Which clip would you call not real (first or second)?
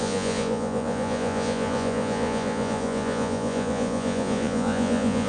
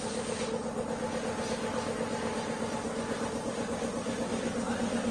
first